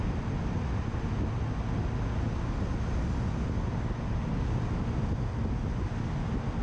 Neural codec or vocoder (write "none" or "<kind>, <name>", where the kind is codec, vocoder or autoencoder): none